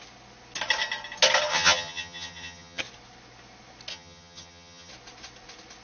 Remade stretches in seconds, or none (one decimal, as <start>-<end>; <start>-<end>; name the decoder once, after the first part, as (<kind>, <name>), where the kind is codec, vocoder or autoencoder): 1.5-2.8 (vocoder, HiFi-GAN); 3.9-4.9